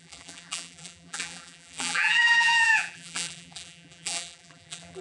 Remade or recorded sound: remade